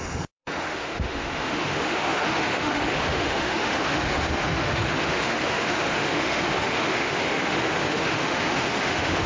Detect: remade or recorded remade